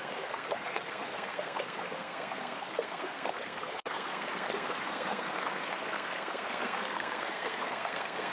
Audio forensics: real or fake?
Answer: fake